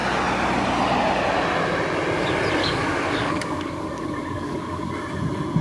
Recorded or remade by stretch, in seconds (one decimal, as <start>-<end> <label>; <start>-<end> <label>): 0.0-2.6 recorded; 2.6-4.9 remade; 4.9-5.6 recorded